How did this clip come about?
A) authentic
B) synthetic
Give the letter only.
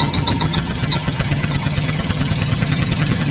B